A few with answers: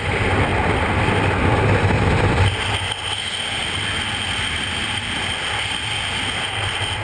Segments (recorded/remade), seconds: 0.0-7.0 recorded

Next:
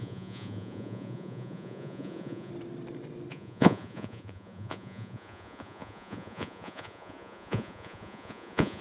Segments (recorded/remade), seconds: 0.0-2.5 remade; 2.5-3.3 recorded; 3.3-8.8 remade

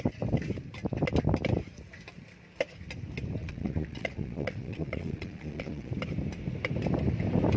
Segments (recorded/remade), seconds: 0.0-3.4 recorded; 3.4-5.9 remade; 5.9-7.6 recorded

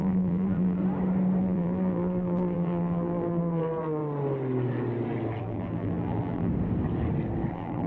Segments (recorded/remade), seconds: 0.0-0.8 remade; 0.8-1.4 recorded; 1.4-4.0 remade; 4.0-5.4 recorded; 5.4-6.5 remade; 6.5-7.5 recorded; 7.5-7.9 remade